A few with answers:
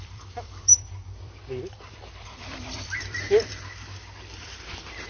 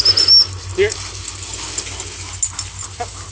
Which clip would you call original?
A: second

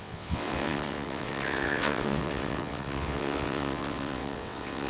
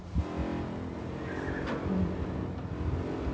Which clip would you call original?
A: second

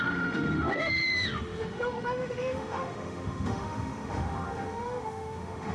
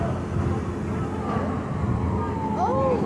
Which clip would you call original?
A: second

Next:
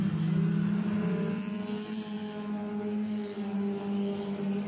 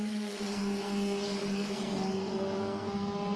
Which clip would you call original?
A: first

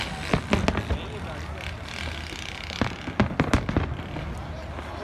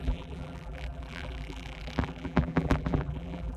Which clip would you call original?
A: first